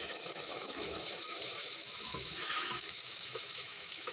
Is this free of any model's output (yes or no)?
no